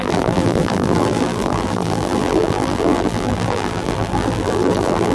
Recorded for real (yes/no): no